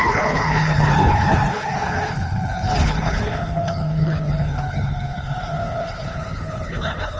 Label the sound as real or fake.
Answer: fake